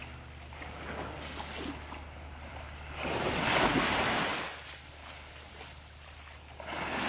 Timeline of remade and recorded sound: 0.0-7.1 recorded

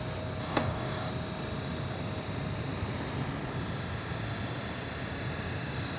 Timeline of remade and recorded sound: 0.0-0.4 recorded; 0.4-1.1 remade; 1.1-6.0 recorded

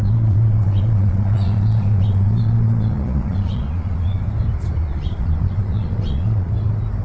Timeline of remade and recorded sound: 0.0-4.2 remade; 4.2-4.8 recorded; 4.8-6.5 remade; 6.5-7.0 recorded

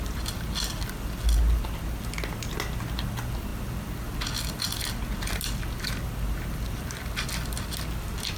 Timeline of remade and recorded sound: 0.0-8.4 recorded

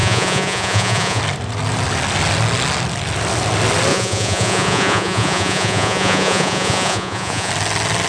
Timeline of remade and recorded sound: 0.0-1.2 remade; 1.2-3.9 recorded; 3.9-7.5 remade; 7.5-8.1 recorded